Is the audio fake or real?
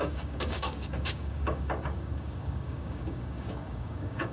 fake